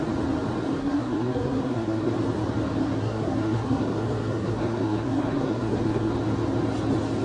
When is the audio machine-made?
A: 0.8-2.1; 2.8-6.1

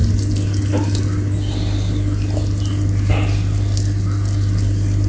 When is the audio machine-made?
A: none

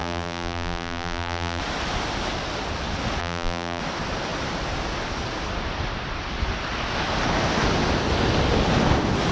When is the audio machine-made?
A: 0.0-1.6; 3.2-3.8

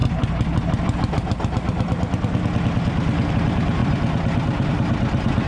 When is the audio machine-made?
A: 3.3-5.5

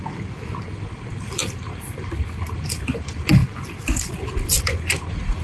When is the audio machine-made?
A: none

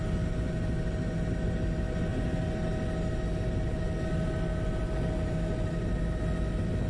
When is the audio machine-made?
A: none